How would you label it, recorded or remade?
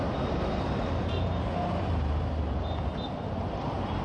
recorded